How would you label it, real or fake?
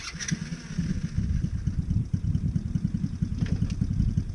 real